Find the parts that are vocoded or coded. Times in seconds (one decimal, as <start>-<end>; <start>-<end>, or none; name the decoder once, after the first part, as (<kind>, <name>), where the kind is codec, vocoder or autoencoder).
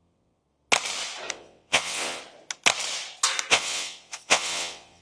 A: 0.0-0.4 (vocoder, WaveNeXt); 1.3-2.2; 3.5-5.0